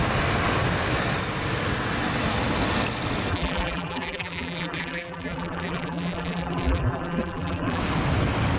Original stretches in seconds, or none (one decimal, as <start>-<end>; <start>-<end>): 0.0-3.3; 7.8-8.6